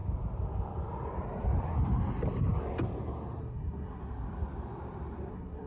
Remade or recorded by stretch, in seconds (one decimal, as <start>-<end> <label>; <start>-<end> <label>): 0.0-3.4 recorded; 3.4-4.0 remade; 4.0-5.3 recorded; 5.3-5.7 remade